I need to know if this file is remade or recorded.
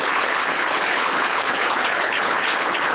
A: remade